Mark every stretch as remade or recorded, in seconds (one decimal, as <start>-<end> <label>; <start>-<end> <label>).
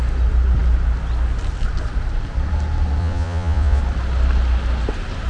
0.0-3.0 recorded; 3.0-3.8 remade; 3.8-5.3 recorded